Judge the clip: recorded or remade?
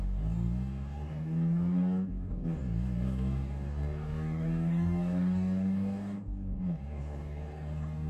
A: remade